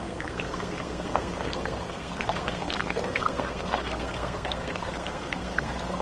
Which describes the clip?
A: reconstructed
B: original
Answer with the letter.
A